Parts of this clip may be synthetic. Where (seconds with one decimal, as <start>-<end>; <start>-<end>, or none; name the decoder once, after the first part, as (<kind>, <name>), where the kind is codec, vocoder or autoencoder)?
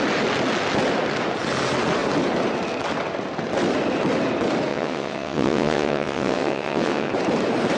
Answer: 4.7-7.1 (vocoder, WaveNeXt)